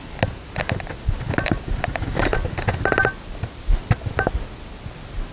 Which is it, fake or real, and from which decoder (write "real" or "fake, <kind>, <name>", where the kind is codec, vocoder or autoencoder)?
real